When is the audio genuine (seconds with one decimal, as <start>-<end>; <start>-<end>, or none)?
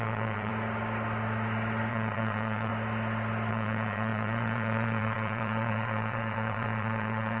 0.5-1.9; 2.7-3.5